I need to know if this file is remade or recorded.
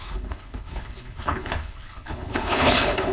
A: remade